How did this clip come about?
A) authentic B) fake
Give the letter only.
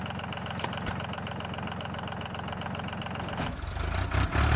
A